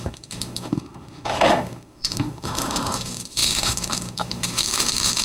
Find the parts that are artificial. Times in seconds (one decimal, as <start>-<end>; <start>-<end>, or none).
0.0-5.2